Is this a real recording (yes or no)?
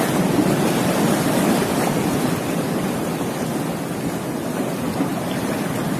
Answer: yes